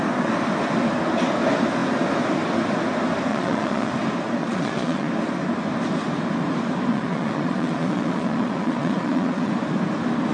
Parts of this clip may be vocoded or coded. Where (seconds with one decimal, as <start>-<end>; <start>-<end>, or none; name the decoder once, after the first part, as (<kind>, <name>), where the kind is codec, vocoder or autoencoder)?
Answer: 3.3-3.9 (vocoder, Vocos); 4.4-5.1; 6.9-9.5